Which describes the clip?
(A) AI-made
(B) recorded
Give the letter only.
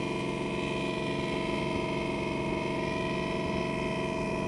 B